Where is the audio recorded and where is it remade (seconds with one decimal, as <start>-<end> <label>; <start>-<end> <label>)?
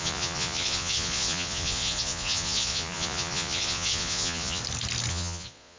0.0-4.6 remade; 4.6-5.1 recorded; 5.1-5.8 remade